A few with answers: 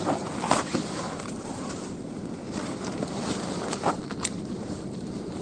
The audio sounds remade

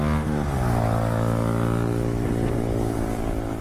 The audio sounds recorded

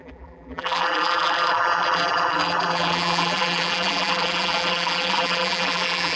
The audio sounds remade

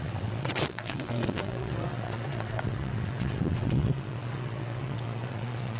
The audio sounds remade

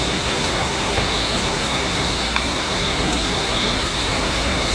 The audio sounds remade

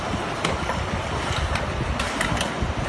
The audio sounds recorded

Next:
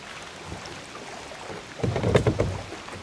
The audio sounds recorded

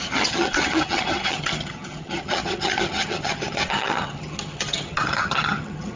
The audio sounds remade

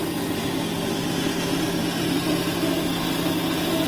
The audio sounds recorded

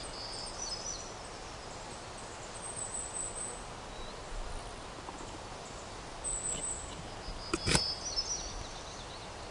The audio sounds recorded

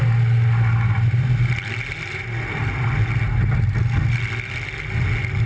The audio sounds recorded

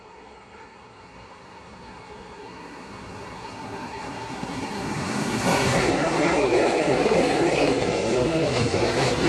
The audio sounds remade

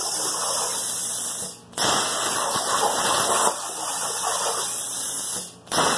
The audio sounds recorded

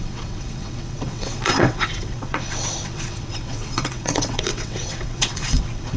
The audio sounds remade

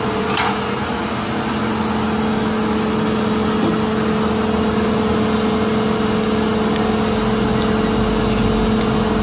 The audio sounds recorded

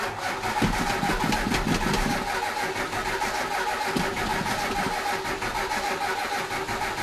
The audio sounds recorded